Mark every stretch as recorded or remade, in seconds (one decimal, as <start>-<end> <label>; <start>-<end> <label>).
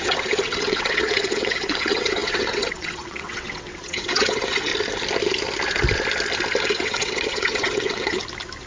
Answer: 0.0-4.7 remade; 4.7-6.6 recorded; 6.6-8.2 remade; 8.2-8.7 recorded